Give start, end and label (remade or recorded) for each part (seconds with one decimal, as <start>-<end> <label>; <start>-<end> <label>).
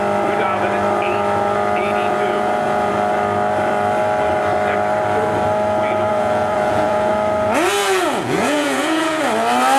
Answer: 0.0-2.0 recorded; 2.0-2.9 remade; 2.9-6.1 recorded; 6.1-7.1 remade; 7.1-7.8 recorded; 7.8-9.2 remade; 9.2-9.8 recorded